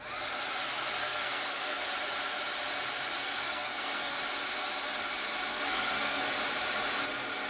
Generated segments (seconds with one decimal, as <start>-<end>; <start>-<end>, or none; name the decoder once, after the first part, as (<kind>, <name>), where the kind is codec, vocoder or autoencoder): 1.0-1.8 (codec, SNAC); 3.2-4.2; 5.5-6.2